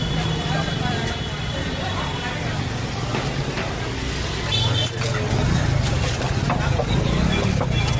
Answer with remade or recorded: recorded